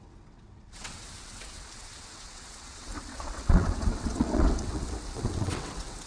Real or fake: fake